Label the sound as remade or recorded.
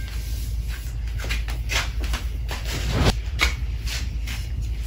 recorded